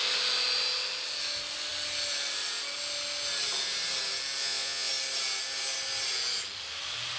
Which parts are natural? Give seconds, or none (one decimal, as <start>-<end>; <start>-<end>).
0.0-4.4; 4.9-7.2